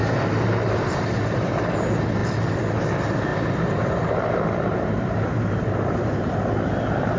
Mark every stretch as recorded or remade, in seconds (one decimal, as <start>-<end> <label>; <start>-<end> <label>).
0.0-1.7 remade; 1.7-3.3 recorded; 3.3-4.3 remade; 4.3-4.7 recorded; 4.7-6.3 remade; 6.3-7.2 recorded